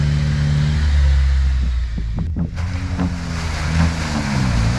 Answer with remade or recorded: recorded